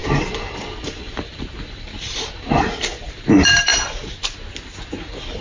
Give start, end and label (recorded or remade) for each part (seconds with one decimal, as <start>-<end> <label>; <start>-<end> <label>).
0.0-3.7 remade; 3.7-5.0 recorded; 5.0-5.4 remade